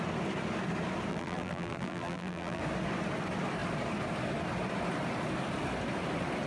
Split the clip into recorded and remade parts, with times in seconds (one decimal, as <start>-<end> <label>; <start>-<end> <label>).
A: 0.0-1.1 recorded; 1.1-2.6 remade; 2.6-6.5 recorded